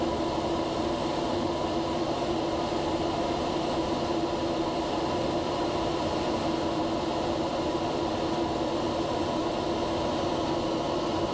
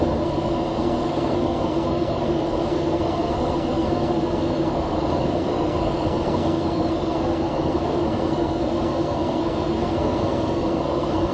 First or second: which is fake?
second